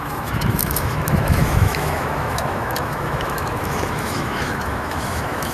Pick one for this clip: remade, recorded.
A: remade